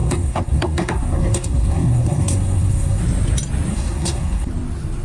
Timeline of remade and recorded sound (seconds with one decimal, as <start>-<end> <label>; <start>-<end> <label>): 0.0-3.0 remade; 3.0-3.7 recorded; 3.7-4.5 remade; 4.5-5.0 recorded